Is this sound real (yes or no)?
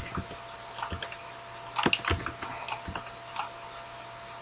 yes